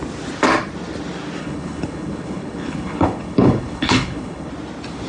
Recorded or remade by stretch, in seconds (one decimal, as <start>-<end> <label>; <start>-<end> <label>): 0.0-1.4 recorded; 1.4-4.5 remade; 4.5-5.1 recorded